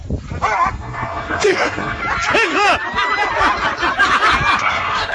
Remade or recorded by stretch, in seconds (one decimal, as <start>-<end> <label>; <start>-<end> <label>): 0.0-0.7 recorded; 0.7-2.0 remade; 2.0-4.6 recorded; 4.6-5.1 remade